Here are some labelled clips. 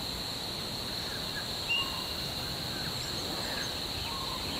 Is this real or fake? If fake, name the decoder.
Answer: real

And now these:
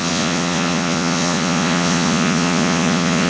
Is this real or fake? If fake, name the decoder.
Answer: fake, vocoder, Vocos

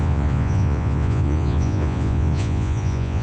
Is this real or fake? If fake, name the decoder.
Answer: fake, vocoder, Vocos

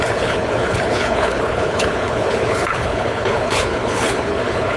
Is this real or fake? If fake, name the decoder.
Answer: fake, codec, HILCodec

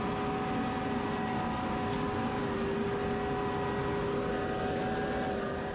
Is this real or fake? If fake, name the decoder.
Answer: real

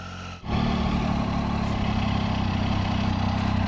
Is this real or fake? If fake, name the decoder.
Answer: real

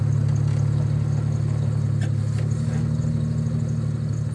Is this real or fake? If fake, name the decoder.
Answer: real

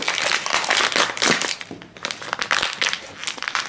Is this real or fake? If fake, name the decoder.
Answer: real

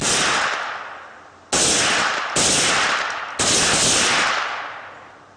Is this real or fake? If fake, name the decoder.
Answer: real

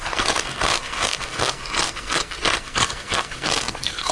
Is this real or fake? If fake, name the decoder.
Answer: fake, codec, SNAC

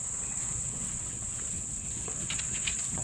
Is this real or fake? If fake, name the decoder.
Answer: fake, vocoder, WaveNeXt